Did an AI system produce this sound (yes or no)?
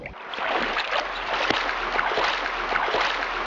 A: no